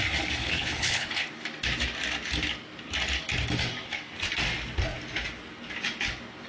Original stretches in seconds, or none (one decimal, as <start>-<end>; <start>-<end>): 0.0-0.4; 1.3-6.5